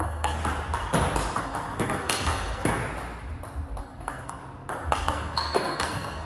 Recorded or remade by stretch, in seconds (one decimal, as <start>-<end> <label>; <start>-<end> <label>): 0.0-0.4 remade; 0.4-1.4 recorded; 1.4-2.8 remade; 2.8-3.8 recorded; 3.8-4.4 remade; 4.4-4.9 recorded; 4.9-6.3 remade